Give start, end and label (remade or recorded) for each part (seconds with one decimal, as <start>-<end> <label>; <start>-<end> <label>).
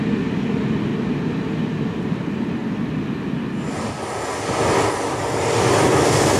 0.0-0.9 remade; 0.9-2.0 recorded; 2.0-2.6 remade; 2.6-5.5 recorded; 5.5-6.4 remade